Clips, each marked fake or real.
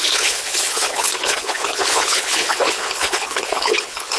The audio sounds fake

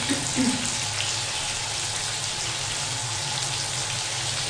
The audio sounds real